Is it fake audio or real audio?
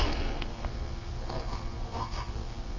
fake